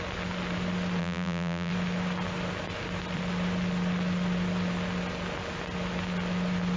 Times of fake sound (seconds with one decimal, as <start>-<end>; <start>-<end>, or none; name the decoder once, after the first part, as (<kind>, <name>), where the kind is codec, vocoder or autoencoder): 1.0-1.7 (vocoder, BigVGAN v2)